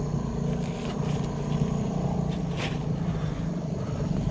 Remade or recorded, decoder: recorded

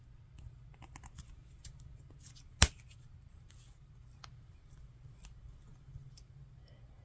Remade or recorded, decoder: recorded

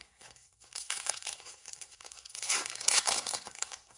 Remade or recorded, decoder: remade, codec, SNAC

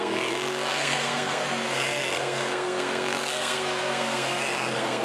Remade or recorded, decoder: remade, codec, SNAC